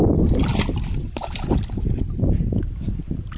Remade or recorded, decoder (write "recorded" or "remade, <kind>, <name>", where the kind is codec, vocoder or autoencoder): recorded